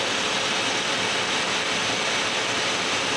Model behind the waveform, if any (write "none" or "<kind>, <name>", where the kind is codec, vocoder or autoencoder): none